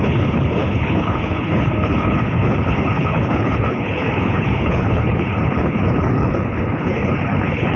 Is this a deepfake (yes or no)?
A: yes